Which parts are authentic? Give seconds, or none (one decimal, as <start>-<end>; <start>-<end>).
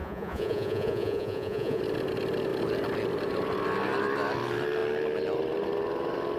1.8-6.4